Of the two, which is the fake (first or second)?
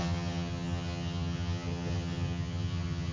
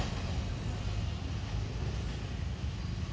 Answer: first